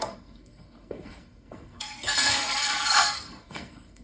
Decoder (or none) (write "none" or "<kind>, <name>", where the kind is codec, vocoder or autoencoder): codec, SNAC